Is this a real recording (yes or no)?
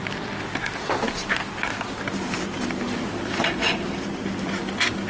yes